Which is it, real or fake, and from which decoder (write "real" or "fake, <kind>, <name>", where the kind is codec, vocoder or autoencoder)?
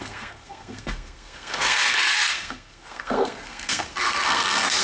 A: fake, codec, SNAC